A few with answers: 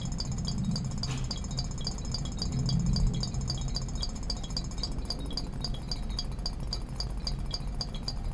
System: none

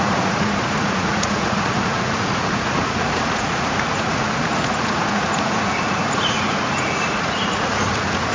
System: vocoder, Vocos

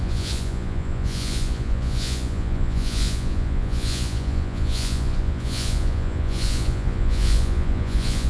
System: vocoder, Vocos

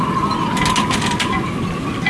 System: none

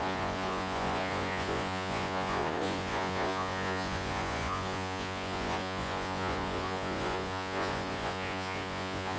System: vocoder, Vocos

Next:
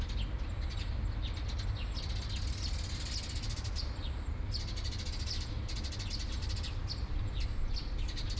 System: none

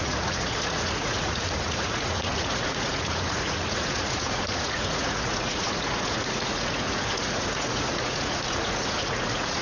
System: vocoder, Vocos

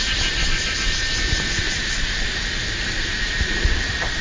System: none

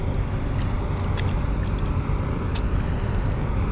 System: none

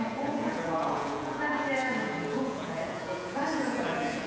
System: vocoder, Vocos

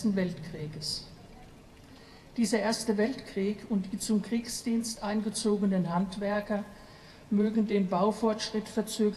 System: vocoder, Vocos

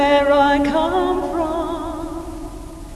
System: none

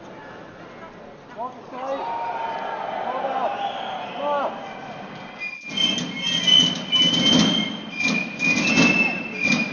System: none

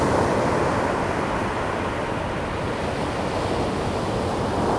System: none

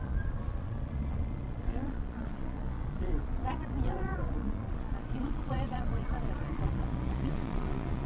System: vocoder, Vocos